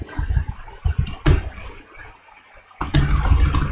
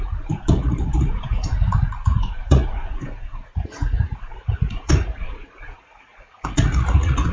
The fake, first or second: second